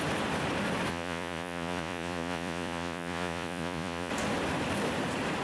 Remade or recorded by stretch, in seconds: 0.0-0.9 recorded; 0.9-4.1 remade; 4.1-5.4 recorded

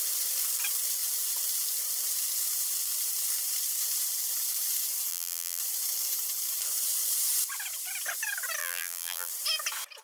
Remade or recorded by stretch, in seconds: 0.0-5.1 recorded; 5.1-5.6 remade; 5.6-8.6 recorded; 8.6-9.3 remade; 9.3-10.0 recorded

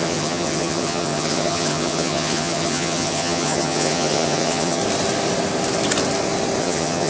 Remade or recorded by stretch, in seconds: 0.0-4.8 remade; 4.8-6.6 recorded; 6.6-7.1 remade

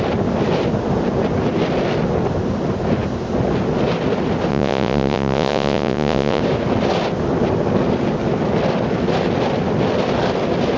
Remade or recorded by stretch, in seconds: 0.0-4.5 recorded; 4.5-6.4 remade; 6.4-10.8 recorded

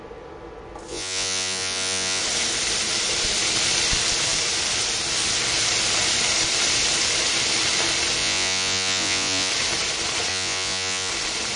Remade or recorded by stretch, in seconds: 0.0-0.9 recorded; 0.9-2.2 remade; 2.2-8.2 recorded; 8.2-9.5 remade; 9.5-10.3 recorded; 10.3-11.1 remade; 11.1-11.6 recorded

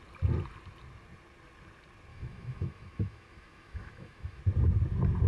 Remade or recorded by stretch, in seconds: 0.0-2.1 recorded; 2.1-4.4 remade; 4.4-5.3 recorded

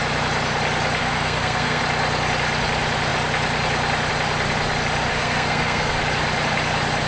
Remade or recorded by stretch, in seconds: 0.0-1.0 recorded; 1.0-1.8 remade; 1.8-5.1 recorded; 5.1-6.0 remade; 6.0-7.1 recorded

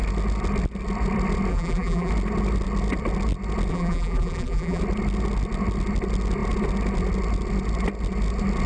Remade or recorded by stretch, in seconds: 0.0-1.5 recorded; 1.5-2.1 remade; 2.1-3.7 recorded; 3.7-4.8 remade; 4.8-8.7 recorded